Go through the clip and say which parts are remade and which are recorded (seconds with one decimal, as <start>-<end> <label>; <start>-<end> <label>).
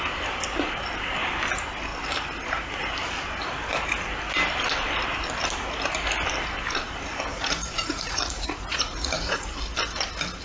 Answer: 0.0-7.3 recorded; 7.3-9.5 remade; 9.5-10.4 recorded